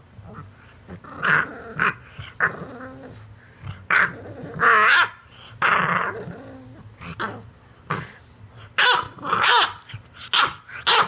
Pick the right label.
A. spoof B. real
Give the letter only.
B